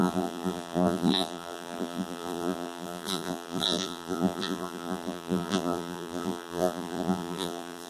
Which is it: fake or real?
fake